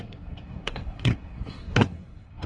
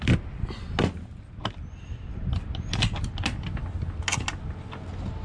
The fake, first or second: first